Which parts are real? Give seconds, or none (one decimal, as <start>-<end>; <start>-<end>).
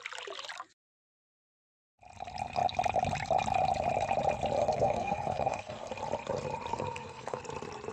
0.0-4.6; 5.9-6.7; 7.4-7.9